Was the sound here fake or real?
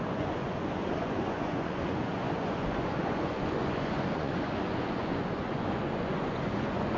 fake